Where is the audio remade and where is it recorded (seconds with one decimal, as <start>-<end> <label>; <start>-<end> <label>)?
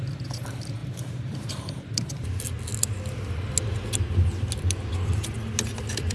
0.0-0.8 recorded; 0.8-1.8 remade; 1.8-6.1 recorded